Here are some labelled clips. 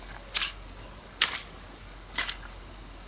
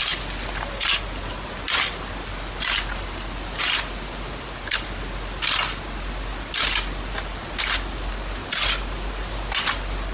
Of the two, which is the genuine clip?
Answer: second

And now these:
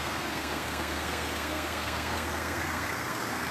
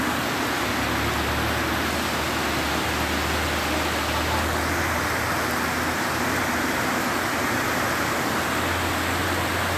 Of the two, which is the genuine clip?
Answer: second